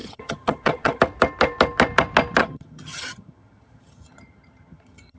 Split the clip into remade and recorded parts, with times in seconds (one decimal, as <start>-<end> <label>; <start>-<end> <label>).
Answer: 0.0-1.0 remade; 1.0-2.4 recorded; 2.4-5.2 remade